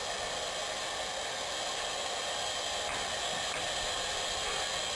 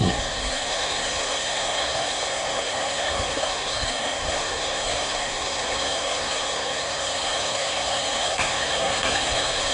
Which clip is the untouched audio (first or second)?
first